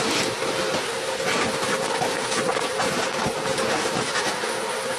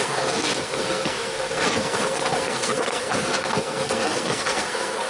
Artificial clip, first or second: second